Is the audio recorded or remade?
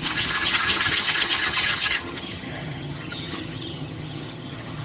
remade